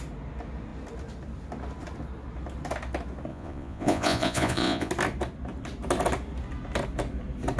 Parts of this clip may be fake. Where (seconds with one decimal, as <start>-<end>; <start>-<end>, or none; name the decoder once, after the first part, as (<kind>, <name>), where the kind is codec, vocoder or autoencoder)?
3.3-4.9 (vocoder, Vocos)